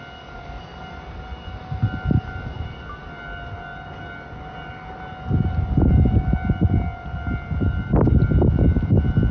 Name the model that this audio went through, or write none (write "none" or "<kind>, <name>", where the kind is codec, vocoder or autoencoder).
none